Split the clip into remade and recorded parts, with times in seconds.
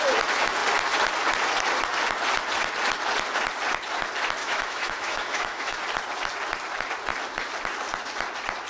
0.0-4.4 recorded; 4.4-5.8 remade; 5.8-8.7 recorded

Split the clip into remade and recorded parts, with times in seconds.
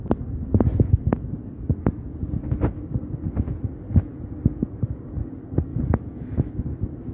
0.0-5.7 recorded; 5.7-6.5 remade; 6.5-7.1 recorded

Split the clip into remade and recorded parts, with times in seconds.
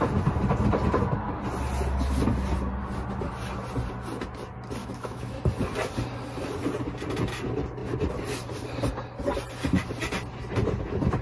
0.0-4.8 recorded; 4.8-5.4 remade; 5.4-11.2 recorded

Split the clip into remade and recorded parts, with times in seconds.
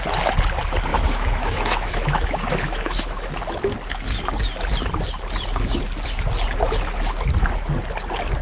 0.0-0.9 recorded; 0.9-3.4 remade; 3.4-8.4 recorded